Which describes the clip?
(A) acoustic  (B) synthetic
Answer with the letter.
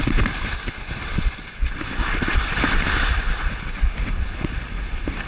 B